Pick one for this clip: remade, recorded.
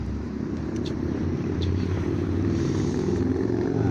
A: remade